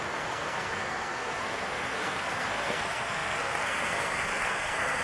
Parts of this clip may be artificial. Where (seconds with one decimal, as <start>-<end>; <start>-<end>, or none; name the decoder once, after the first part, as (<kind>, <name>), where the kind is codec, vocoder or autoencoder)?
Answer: 0.0-5.0 (codec, SNAC)